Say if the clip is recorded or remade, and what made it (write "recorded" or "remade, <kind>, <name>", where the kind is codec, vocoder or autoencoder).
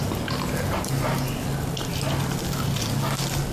recorded